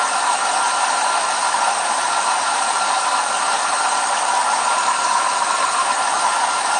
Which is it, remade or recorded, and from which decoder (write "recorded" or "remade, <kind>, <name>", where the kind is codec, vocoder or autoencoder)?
remade, vocoder, BigVGAN v2